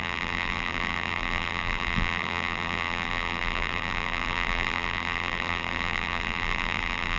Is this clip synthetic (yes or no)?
yes